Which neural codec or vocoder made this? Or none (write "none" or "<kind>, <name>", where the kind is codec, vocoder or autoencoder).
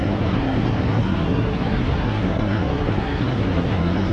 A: codec, SNAC